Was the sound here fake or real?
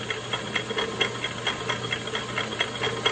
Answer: real